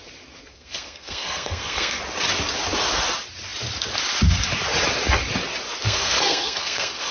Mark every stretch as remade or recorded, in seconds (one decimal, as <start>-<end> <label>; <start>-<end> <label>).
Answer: 0.0-0.5 recorded; 0.5-2.0 remade; 2.0-5.8 recorded; 5.8-7.1 remade